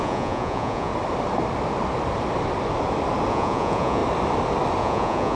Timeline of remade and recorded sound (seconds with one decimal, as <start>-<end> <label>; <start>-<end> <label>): 0.0-0.9 remade; 0.9-3.3 recorded; 3.3-4.0 remade; 4.0-4.8 recorded; 4.8-5.4 remade